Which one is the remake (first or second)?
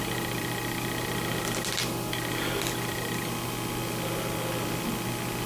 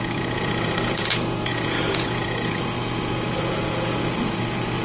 second